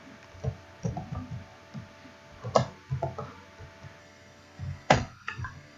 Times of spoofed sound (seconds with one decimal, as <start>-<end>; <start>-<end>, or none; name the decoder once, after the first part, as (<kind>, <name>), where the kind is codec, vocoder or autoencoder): 4.0-5.8 (codec, SNAC)